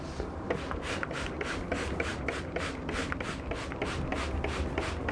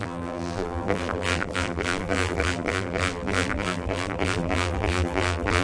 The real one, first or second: first